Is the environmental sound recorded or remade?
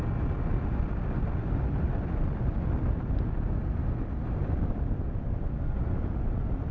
recorded